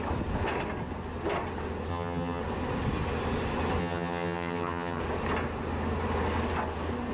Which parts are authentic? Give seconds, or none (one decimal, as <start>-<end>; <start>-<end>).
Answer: 0.0-1.9; 2.4-3.8; 5.0-7.1